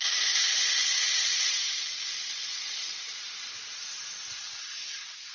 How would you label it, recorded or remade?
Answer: recorded